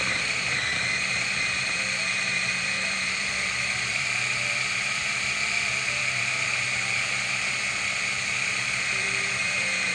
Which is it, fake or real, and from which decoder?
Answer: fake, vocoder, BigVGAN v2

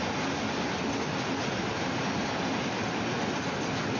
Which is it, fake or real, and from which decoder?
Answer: real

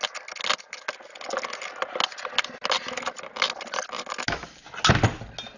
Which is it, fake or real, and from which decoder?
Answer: real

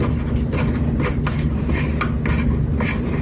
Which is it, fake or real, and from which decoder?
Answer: real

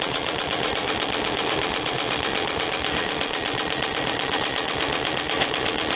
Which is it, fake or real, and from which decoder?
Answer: fake, vocoder, Vocos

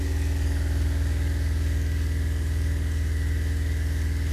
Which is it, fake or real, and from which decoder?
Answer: fake, codec, DAC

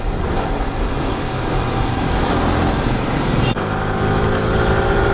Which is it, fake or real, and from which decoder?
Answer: fake, vocoder, BigVGAN v2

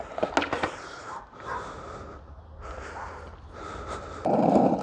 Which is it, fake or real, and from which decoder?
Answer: real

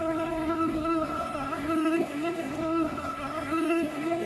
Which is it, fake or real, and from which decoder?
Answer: fake, codec, SNAC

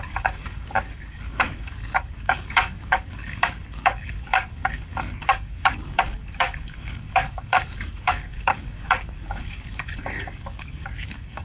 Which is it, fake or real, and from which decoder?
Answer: fake, codec, DAC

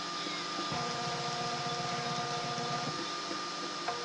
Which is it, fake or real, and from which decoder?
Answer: real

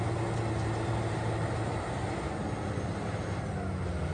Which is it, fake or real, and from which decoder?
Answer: real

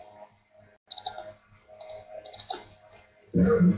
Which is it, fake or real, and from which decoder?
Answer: real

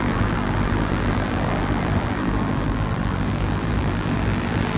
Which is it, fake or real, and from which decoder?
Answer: fake, vocoder, BigVGAN v2